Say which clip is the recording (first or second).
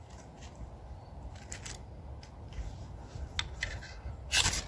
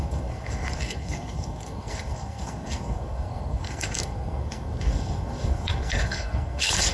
first